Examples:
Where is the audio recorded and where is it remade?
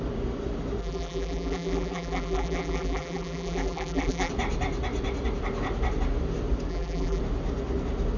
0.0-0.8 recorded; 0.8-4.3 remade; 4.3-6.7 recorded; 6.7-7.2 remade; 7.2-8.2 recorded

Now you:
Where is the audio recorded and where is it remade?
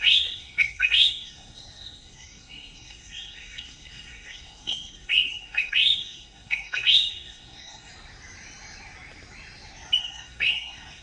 0.0-7.9 remade; 7.9-10.0 recorded; 10.0-11.0 remade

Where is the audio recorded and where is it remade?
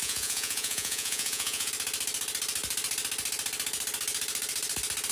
0.0-1.7 remade; 1.7-5.1 recorded